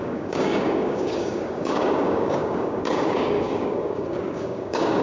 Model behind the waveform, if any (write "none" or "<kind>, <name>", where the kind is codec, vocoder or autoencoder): codec, DAC